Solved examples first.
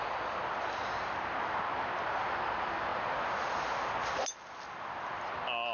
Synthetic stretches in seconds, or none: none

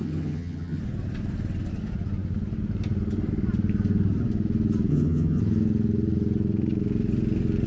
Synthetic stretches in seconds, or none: 0.0-0.8 (vocoder, HiFi-GAN); 4.9-5.4

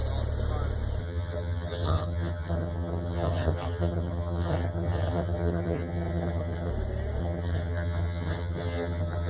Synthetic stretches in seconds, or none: 1.0-6.7 (vocoder, HiFi-GAN); 7.2-9.3

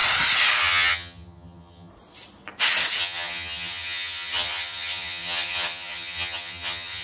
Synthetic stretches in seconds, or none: 0.6-1.9 (vocoder, HiFi-GAN); 3.0-7.0

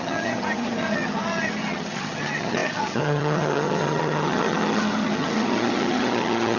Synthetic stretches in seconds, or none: 0.0-6.6 (vocoder, HiFi-GAN)